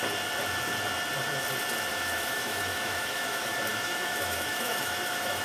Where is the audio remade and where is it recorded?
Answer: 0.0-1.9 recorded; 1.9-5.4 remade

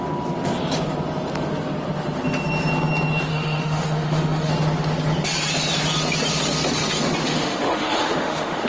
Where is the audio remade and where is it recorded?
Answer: 0.0-3.3 recorded; 3.3-4.5 remade; 4.5-7.2 recorded; 7.2-8.7 remade

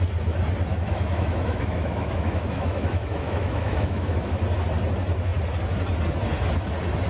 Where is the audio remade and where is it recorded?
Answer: 0.0-0.7 recorded; 0.7-4.4 remade; 4.4-7.1 recorded

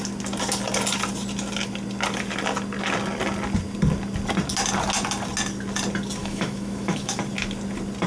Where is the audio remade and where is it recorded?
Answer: 0.0-6.2 recorded; 6.2-7.2 remade; 7.2-8.1 recorded

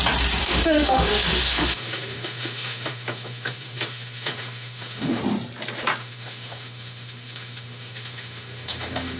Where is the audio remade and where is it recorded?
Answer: 0.0-0.4 recorded; 0.4-5.2 remade; 5.2-6.0 recorded; 6.0-9.2 remade

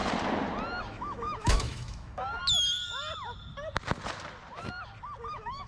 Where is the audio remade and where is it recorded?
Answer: 0.0-0.8 recorded; 0.8-2.4 remade; 2.4-5.3 recorded; 5.3-5.7 remade

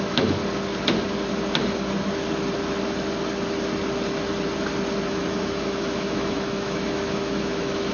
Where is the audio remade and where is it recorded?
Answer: 0.0-0.4 remade; 0.4-5.1 recorded; 5.1-7.9 remade